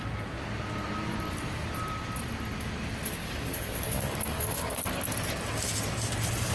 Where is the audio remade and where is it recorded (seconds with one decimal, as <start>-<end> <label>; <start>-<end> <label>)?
0.0-3.2 recorded; 3.2-4.8 remade; 4.8-6.5 recorded